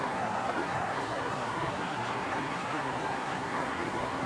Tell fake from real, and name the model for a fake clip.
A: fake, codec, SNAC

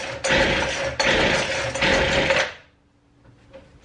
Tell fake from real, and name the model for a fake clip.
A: real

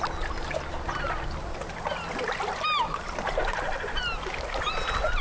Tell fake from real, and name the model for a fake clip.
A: real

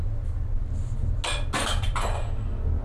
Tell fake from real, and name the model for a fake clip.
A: real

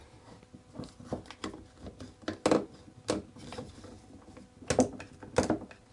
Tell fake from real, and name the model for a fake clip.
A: real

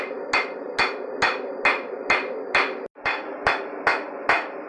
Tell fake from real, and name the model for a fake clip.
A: real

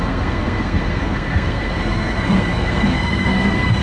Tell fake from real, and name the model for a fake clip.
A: fake, codec, SNAC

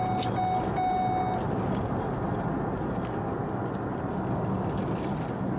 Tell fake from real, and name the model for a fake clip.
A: real